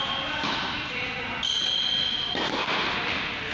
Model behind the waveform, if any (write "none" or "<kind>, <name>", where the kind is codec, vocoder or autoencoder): none